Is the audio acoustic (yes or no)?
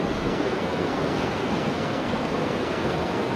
no